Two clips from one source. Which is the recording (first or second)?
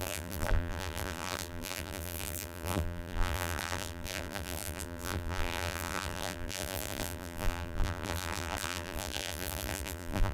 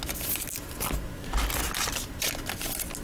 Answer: second